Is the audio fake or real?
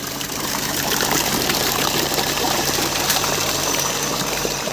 fake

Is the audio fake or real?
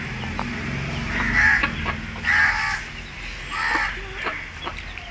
real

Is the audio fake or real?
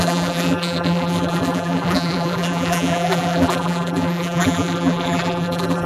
fake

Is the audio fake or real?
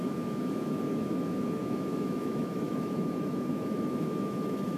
fake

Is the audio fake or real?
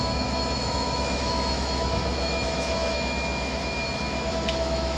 fake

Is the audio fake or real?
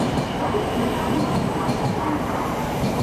fake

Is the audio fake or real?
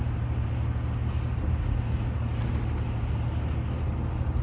real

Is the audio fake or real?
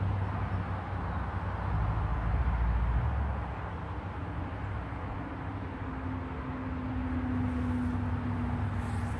real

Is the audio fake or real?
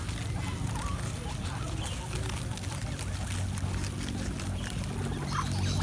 real